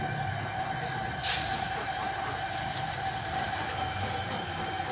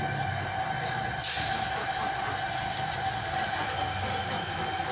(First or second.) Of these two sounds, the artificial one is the first